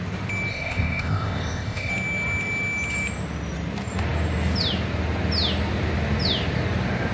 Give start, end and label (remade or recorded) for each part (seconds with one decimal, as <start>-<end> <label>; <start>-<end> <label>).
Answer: 0.0-0.5 recorded; 0.5-1.9 remade; 1.9-7.1 recorded